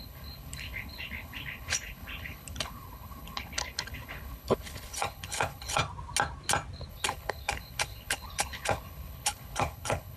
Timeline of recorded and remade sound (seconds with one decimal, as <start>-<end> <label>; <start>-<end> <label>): 0.0-5.8 remade; 5.8-6.9 recorded; 6.9-10.2 remade